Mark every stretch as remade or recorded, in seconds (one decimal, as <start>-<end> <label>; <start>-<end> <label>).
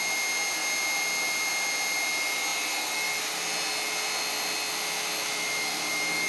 0.0-6.3 recorded